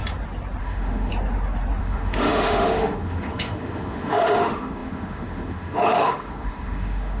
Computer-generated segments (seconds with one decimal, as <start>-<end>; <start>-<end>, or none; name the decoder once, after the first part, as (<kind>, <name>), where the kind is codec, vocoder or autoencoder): 0.6-1.1 (autoencoder, DAC-VAE); 1.8-7.2